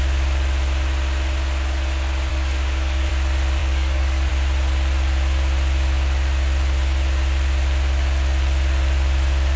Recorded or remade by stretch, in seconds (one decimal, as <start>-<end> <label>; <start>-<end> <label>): 0.0-2.3 recorded; 2.3-3.1 remade; 3.1-3.6 recorded; 3.6-4.3 remade; 4.3-9.6 recorded